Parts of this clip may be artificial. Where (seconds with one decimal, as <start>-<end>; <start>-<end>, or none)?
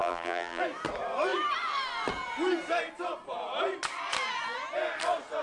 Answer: 0.0-0.6